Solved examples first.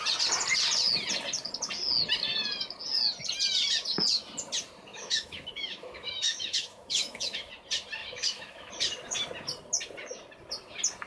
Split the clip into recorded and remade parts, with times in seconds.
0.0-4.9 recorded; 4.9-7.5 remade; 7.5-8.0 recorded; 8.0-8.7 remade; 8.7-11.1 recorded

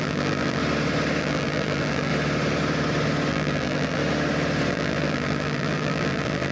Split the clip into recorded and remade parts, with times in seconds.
0.0-0.6 remade; 0.6-1.2 recorded; 1.2-2.1 remade; 2.1-3.3 recorded; 3.3-4.0 remade; 4.0-4.7 recorded; 4.7-6.5 remade

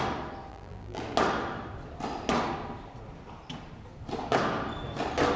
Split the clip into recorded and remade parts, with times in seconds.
0.0-0.5 recorded; 0.5-1.0 remade; 1.0-5.4 recorded

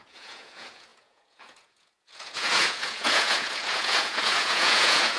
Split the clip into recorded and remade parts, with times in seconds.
0.0-5.2 remade